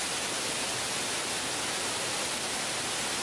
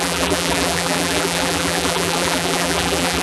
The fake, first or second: second